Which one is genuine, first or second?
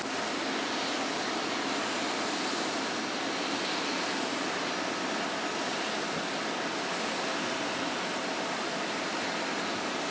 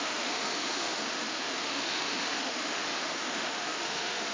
first